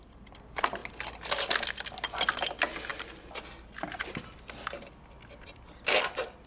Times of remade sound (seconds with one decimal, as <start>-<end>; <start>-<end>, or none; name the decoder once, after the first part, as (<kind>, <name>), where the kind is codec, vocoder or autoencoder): none

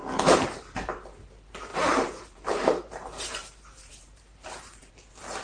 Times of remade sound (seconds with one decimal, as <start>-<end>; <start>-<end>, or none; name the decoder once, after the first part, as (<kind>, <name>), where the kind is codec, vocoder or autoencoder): 0.0-0.9 (vocoder, BigVGAN v2); 1.7-4.9

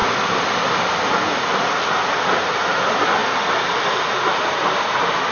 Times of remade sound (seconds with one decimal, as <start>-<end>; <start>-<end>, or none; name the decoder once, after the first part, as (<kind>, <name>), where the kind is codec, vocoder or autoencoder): none

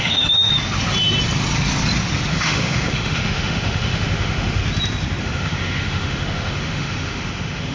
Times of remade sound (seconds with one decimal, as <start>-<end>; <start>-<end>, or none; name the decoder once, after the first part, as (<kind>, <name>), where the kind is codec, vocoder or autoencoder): 0.0-0.5 (autoencoder, DAC-VAE); 2.3-4.6; 5.2-7.7